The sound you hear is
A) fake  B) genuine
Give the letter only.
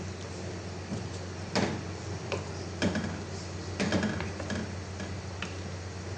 B